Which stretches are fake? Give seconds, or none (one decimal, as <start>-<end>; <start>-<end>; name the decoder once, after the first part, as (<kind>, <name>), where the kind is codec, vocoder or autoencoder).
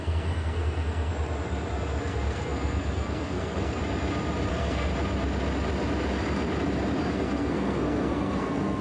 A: 0.0-1.1 (codec, SNAC); 2.0-3.8; 4.5-4.9; 7.1-8.8